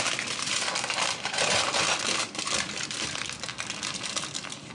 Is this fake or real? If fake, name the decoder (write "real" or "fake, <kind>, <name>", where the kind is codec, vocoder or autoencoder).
real